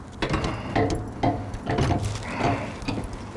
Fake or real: real